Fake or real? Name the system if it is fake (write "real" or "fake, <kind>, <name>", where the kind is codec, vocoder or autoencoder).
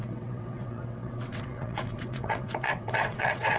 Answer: fake, vocoder, WaveNeXt